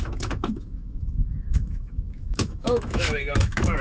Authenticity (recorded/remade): remade